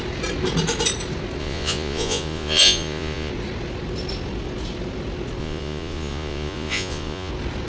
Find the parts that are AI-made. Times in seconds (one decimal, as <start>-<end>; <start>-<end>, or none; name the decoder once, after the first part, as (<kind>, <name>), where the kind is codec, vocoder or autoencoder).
1.4-3.3 (vocoder, Vocos); 5.4-7.3